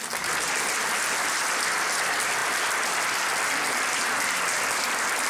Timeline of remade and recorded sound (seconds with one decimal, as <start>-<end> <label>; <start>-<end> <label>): 0.0-5.3 recorded